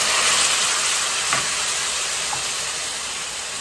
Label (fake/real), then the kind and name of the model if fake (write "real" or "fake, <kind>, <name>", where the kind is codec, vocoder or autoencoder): real